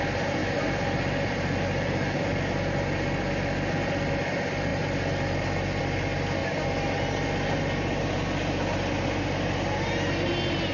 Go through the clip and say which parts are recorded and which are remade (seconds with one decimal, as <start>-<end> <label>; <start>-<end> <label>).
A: 0.0-0.4 recorded; 0.4-2.4 remade; 2.4-10.7 recorded